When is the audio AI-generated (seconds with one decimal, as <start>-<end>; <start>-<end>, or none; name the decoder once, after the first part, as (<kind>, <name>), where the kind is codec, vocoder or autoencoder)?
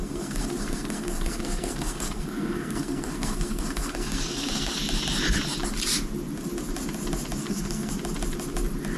0.0-4.7 (codec, SNAC); 7.4-7.9